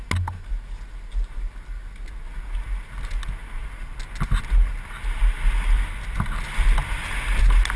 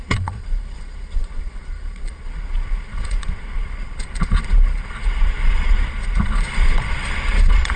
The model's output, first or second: second